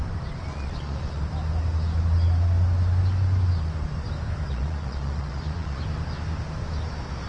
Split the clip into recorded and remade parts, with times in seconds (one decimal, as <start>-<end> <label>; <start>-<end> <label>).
0.0-0.5 recorded; 0.5-1.2 remade; 1.2-4.5 recorded; 4.5-5.8 remade; 5.8-7.3 recorded